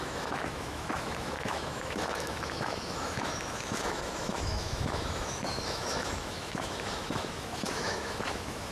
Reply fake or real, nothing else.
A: fake